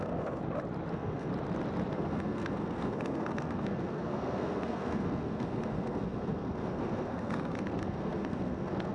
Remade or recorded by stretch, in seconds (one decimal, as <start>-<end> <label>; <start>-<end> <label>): 0.0-0.4 remade; 0.4-0.9 recorded; 0.9-1.3 remade; 1.3-1.9 recorded; 1.9-8.9 remade